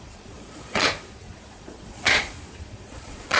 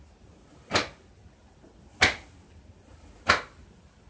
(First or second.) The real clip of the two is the second